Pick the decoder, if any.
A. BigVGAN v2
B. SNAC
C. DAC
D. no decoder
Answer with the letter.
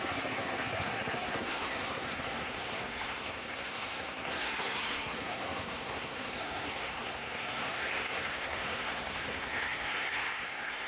B